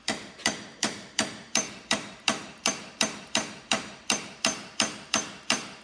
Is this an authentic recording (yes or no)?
no